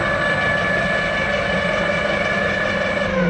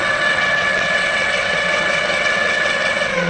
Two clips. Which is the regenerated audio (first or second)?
second